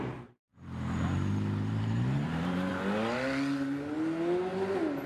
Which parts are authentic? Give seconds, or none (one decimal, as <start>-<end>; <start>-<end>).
0.0-0.5; 2.7-5.1